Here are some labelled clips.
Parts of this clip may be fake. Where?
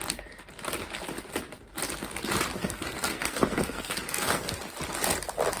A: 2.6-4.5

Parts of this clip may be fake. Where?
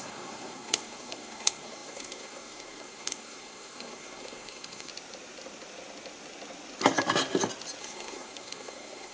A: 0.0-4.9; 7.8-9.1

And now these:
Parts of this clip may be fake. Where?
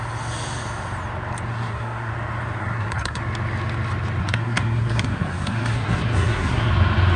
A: 1.5-2.1; 2.6-3.2; 4.2-6.7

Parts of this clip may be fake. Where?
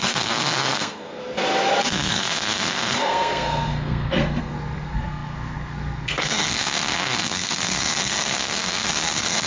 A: 0.0-1.2; 2.1-9.5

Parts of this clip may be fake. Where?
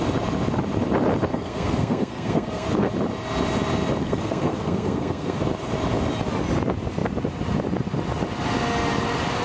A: 1.3-2.9; 4.0-5.4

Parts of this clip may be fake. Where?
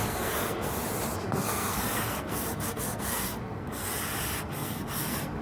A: 0.0-0.7; 1.2-3.9; 4.4-5.4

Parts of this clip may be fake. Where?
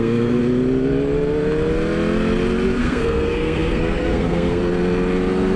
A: 0.0-0.4; 2.8-4.6